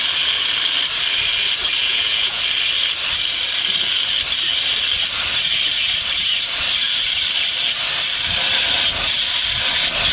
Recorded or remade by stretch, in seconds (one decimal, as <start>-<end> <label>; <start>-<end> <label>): 0.0-1.8 recorded; 1.8-2.4 remade; 2.4-10.1 recorded